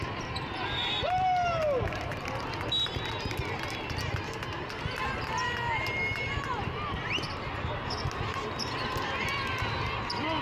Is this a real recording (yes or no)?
yes